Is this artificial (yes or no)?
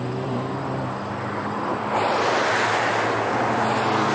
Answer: no